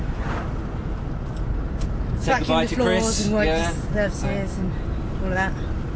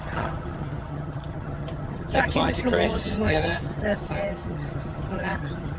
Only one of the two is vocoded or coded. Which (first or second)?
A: second